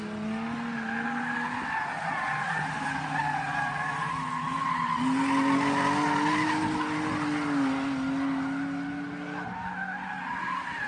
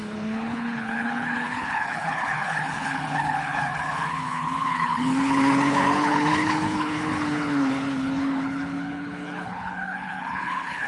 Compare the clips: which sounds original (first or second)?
first